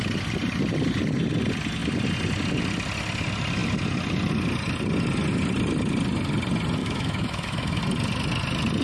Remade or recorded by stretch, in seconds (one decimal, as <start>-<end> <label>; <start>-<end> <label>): 0.0-6.8 recorded; 6.8-7.8 remade; 7.8-8.8 recorded